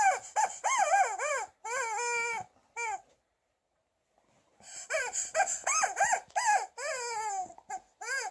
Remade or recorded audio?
recorded